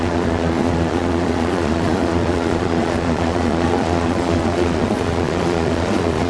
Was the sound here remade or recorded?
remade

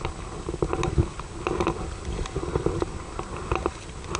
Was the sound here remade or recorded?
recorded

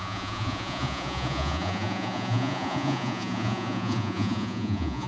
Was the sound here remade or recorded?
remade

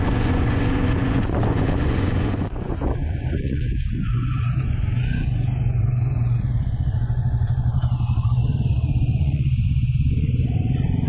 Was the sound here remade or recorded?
remade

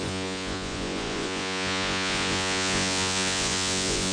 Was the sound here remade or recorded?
remade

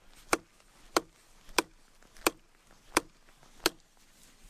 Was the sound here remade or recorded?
recorded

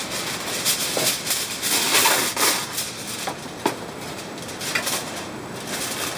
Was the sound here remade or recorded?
recorded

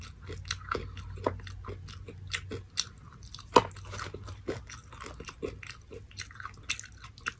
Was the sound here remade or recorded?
recorded